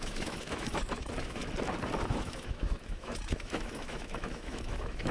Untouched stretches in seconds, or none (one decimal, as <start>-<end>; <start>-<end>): 1.4-2.1